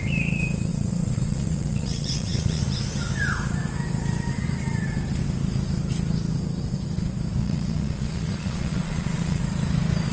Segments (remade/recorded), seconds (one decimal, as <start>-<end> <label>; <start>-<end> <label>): 0.0-0.7 recorded; 0.7-2.6 remade; 2.6-7.4 recorded; 7.4-9.4 remade; 9.4-10.1 recorded